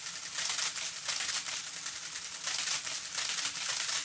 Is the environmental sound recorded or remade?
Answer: recorded